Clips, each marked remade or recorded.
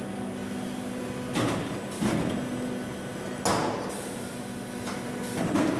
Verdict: recorded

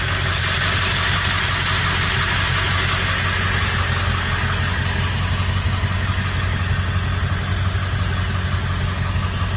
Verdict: recorded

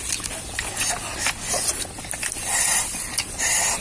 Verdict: recorded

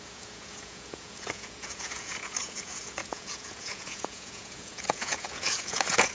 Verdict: remade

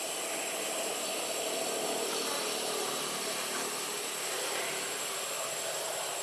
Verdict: recorded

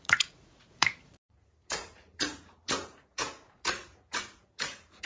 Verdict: remade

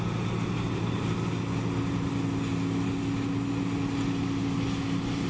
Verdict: recorded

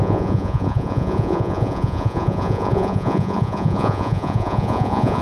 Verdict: remade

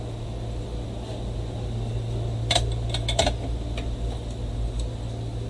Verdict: recorded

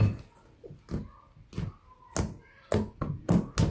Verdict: recorded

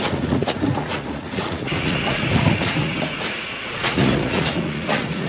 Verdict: remade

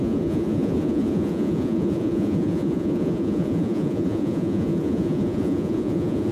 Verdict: remade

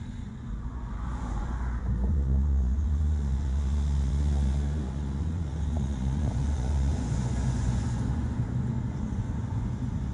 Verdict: remade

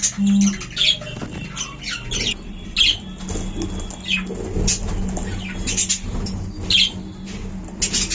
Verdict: recorded